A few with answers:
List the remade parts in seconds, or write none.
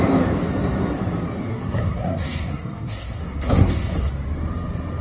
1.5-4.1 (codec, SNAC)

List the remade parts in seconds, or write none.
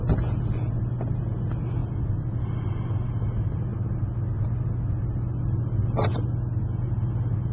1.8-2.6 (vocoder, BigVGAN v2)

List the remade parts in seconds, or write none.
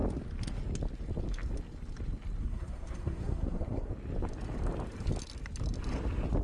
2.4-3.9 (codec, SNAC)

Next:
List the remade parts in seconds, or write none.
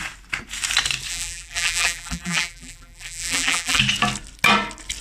1.1-3.8 (vocoder, BigVGAN v2)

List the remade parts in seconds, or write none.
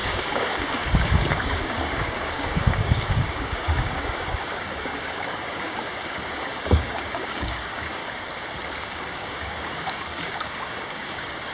0.0-8.0 (codec, DAC); 8.8-11.5